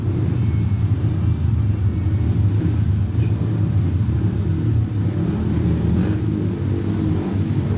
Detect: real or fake real